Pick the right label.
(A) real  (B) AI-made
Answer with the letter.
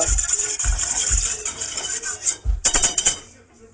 B